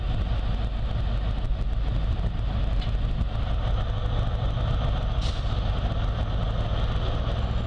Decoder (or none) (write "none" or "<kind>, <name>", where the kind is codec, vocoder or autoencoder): none